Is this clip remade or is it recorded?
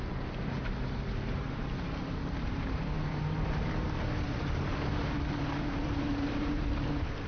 remade